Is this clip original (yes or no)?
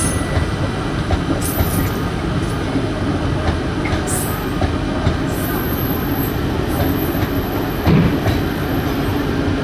yes